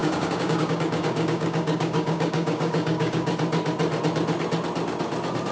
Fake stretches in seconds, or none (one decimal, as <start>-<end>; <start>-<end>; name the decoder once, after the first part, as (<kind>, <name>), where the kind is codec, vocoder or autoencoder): 0.0-3.3 (codec, DAC)